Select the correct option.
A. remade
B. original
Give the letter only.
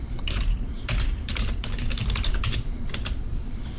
A